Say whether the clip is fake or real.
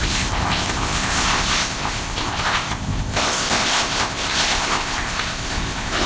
fake